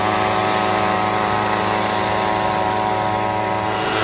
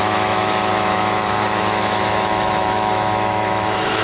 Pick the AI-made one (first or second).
second